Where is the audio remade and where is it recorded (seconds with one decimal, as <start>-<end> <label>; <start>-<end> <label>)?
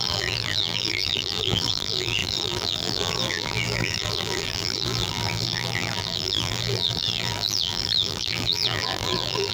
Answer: 0.0-9.5 remade